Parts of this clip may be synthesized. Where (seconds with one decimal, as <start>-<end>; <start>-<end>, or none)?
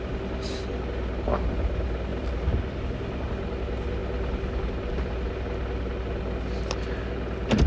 2.1-2.8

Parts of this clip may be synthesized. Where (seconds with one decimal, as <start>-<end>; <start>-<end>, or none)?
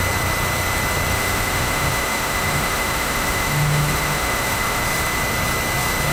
1.1-4.8